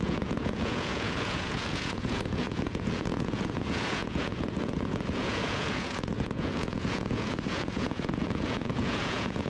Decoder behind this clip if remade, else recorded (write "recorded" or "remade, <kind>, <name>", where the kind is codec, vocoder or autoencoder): remade, vocoder, Vocos